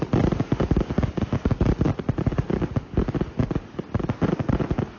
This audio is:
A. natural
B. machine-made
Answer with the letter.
A